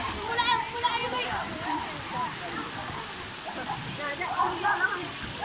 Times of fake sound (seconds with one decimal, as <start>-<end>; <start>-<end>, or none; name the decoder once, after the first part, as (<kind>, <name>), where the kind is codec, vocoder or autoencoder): none